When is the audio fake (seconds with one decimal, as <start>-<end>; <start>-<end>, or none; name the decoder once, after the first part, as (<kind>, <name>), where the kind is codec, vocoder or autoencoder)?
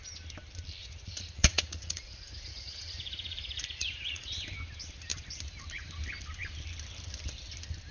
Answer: 0.8-4.3 (vocoder, Vocos)